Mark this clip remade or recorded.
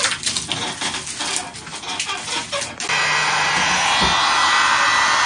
recorded